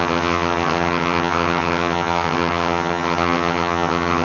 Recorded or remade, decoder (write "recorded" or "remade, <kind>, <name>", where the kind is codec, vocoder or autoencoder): remade, vocoder, HiFi-GAN